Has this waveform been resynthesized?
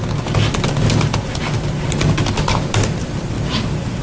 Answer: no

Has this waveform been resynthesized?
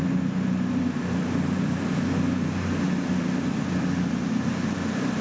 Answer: no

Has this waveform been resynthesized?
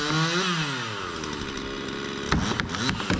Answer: no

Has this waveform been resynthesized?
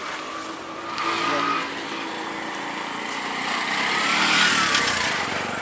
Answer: no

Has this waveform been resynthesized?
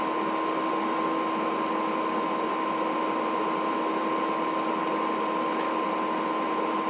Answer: no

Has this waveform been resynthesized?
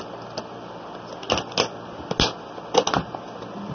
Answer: no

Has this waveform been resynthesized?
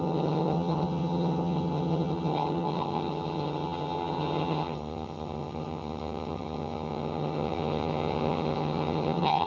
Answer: yes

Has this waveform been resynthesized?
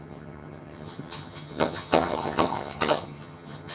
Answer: yes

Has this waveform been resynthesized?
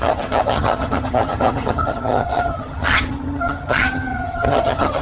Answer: yes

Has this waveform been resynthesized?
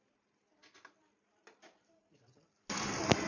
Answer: no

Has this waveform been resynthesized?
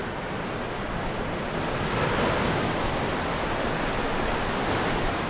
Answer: no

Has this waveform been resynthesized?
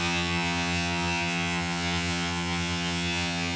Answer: yes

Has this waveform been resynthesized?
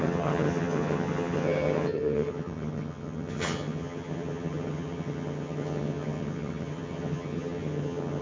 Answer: yes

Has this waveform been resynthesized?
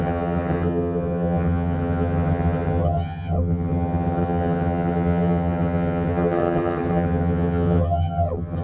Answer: yes